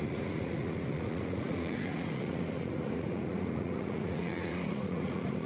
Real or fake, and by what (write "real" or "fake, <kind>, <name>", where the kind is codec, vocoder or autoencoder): fake, vocoder, Vocos